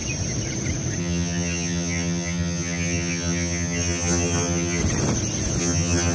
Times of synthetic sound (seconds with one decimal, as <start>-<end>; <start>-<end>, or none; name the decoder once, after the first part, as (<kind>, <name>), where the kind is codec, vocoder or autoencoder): 1.0-4.8 (vocoder, HiFi-GAN); 5.6-6.1